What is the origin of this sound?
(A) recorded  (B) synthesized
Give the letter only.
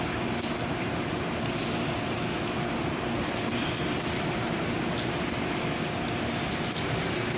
A